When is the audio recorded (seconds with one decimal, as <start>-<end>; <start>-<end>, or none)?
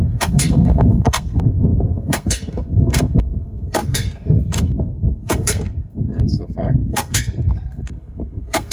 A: none